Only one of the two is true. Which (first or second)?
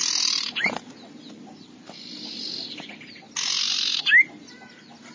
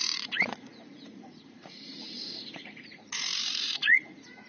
first